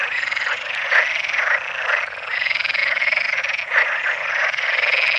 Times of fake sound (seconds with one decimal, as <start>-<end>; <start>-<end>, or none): none